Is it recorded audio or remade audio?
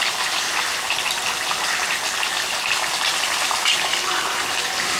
recorded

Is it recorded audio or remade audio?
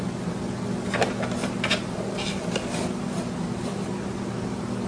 recorded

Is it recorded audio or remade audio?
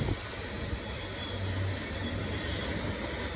recorded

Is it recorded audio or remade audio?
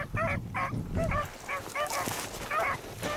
recorded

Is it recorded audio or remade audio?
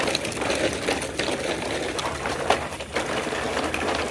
recorded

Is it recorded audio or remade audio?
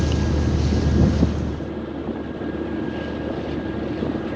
recorded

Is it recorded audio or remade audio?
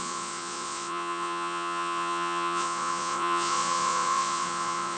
remade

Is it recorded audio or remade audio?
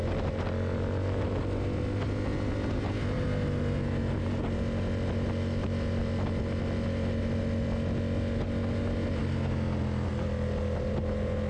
recorded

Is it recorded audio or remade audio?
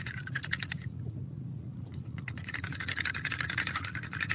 remade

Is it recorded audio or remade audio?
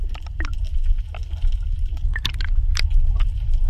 recorded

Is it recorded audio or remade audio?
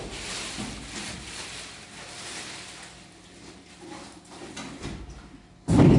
recorded